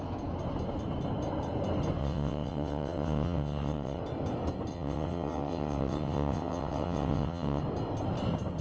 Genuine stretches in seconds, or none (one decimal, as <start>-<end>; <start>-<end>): 0.0-2.0; 4.0-4.7; 7.6-8.6

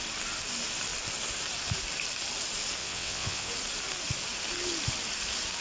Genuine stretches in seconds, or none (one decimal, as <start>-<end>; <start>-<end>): 0.0-2.8; 3.5-5.6